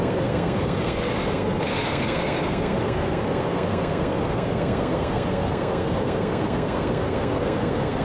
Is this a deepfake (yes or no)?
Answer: yes